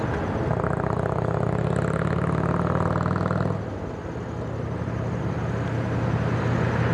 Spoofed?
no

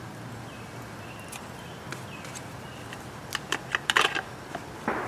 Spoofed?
no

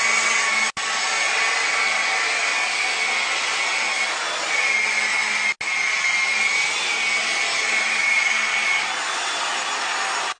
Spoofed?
no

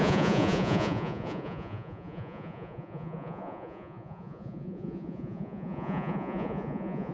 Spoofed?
yes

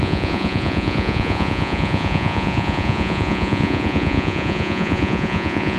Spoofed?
yes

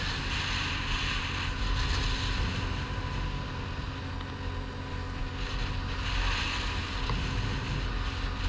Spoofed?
no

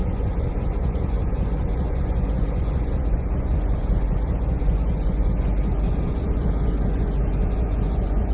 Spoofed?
yes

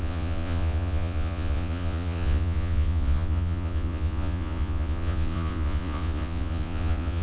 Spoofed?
yes